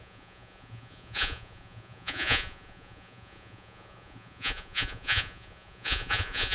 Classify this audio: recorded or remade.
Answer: remade